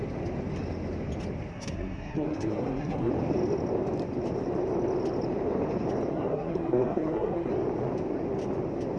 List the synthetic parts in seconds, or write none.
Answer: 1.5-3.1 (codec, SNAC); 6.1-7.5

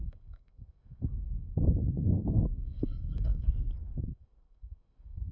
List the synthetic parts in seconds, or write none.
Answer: 0.0-5.3 (codec, SNAC)